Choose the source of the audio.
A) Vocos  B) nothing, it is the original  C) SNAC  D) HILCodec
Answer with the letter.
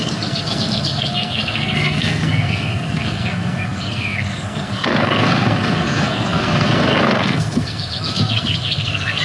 C